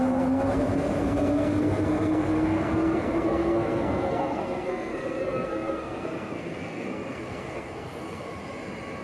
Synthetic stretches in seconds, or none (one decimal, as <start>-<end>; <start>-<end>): 0.0-8.3